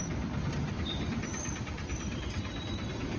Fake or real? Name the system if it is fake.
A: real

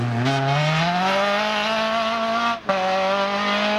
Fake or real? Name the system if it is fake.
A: real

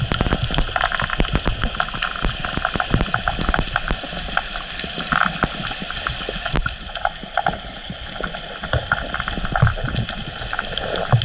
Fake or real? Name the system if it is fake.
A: real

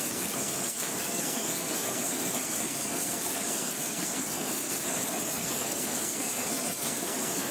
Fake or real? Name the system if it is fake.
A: fake, codec, SNAC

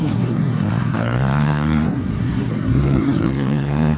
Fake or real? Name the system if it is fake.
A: fake, codec, SNAC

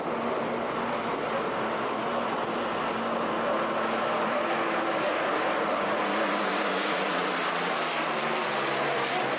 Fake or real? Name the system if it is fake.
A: real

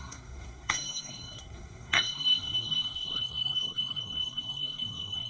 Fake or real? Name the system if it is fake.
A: fake, codec, SNAC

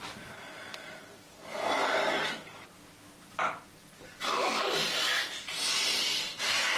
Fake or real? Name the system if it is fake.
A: real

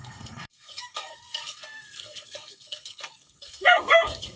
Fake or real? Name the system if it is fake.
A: fake, codec, SNAC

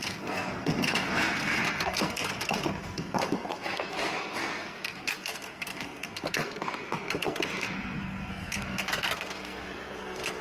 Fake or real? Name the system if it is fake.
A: fake, codec, SNAC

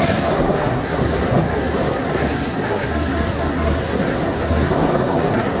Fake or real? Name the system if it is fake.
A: fake, codec, SNAC